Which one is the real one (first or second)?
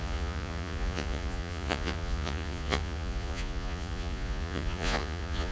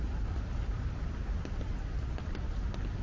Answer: second